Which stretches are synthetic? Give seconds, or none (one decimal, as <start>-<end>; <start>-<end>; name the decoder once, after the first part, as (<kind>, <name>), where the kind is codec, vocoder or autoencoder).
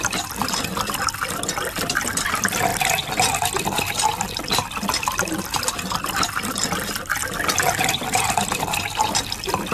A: 0.0-2.7 (vocoder, BigVGAN v2); 7.9-9.7